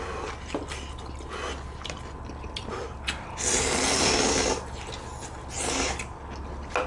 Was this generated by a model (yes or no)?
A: no